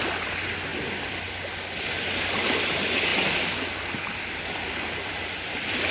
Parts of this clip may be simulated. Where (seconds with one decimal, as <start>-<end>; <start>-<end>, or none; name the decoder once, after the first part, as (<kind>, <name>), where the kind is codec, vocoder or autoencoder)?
0.7-1.4 (vocoder, BigVGAN v2); 3.1-5.9